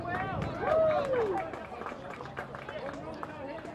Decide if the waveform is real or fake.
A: real